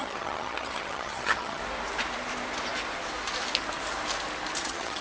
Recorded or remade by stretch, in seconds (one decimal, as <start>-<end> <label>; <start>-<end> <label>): 0.0-1.6 remade; 1.6-4.6 recorded; 4.6-5.0 remade